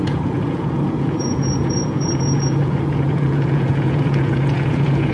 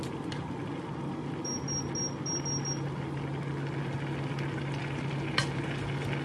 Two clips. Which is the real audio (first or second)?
second